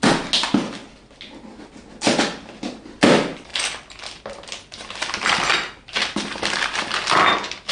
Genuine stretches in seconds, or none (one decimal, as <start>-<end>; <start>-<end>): 0.0-7.7